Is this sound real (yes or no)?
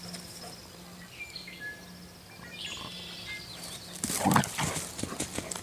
yes